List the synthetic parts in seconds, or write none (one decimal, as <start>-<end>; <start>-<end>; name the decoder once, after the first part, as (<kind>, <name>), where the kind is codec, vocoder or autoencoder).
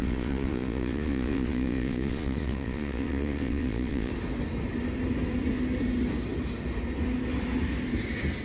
0.0-4.1 (vocoder, Vocos)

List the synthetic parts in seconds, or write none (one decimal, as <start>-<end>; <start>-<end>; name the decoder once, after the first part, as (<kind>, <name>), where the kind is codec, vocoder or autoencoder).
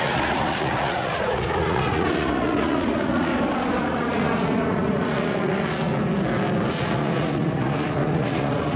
0.0-3.3 (vocoder, Vocos); 3.8-5.9; 6.7-8.8